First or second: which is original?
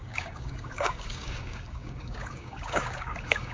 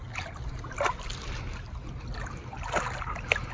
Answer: second